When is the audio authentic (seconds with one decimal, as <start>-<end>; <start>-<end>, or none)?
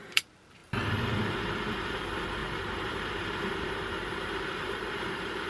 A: 0.6-1.4